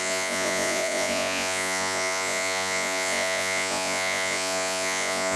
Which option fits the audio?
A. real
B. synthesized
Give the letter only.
B